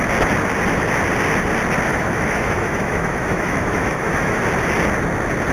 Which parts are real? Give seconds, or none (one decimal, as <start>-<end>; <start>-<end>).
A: 0.0-1.9; 4.4-5.5